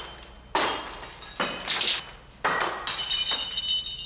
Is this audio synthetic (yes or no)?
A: no